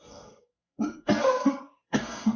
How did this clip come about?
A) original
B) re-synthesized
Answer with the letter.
B